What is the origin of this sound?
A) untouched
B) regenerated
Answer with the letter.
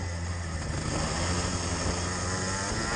A